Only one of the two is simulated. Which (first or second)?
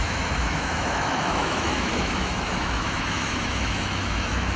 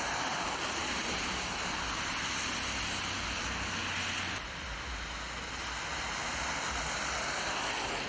first